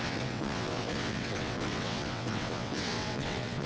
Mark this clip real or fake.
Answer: fake